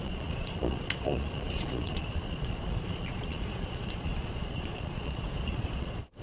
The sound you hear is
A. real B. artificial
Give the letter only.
B